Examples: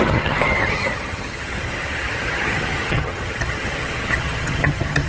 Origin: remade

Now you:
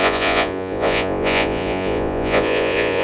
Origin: remade